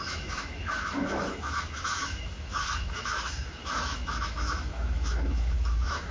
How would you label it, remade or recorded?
remade